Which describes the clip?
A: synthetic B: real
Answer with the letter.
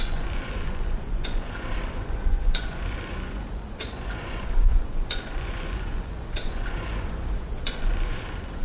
A